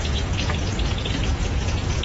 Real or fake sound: fake